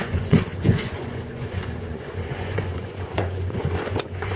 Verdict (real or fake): fake